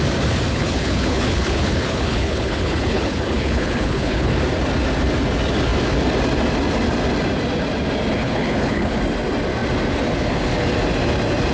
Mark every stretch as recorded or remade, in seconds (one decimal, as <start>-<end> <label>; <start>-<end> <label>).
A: 0.0-0.5 recorded; 0.5-4.3 remade; 4.3-8.2 recorded; 8.2-9.0 remade; 9.0-11.5 recorded